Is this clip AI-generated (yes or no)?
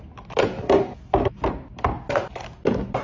no